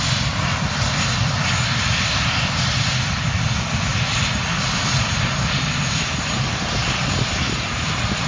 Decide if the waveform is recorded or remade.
recorded